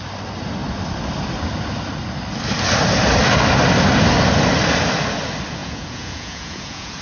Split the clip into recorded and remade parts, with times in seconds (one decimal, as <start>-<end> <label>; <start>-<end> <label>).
0.0-5.6 recorded; 5.6-7.0 remade